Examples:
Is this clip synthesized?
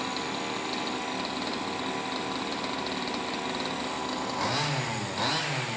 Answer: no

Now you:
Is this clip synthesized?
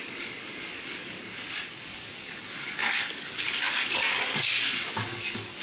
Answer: yes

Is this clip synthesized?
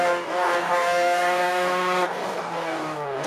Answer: yes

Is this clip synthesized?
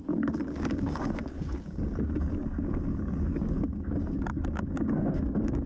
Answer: yes